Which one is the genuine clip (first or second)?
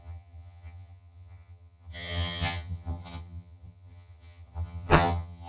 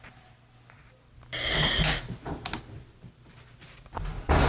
second